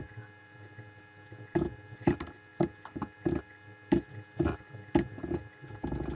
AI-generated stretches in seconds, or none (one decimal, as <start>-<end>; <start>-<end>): none